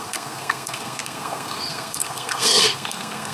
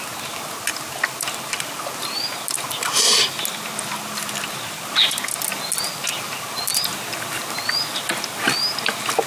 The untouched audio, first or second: second